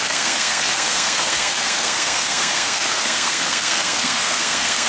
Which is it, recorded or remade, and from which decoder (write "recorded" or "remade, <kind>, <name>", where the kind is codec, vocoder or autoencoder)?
remade, codec, SNAC